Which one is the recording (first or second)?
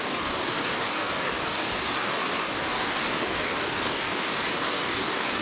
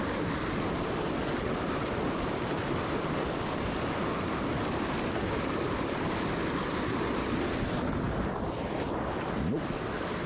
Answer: second